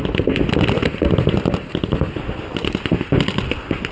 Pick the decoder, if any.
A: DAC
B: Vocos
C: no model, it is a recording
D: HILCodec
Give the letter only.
C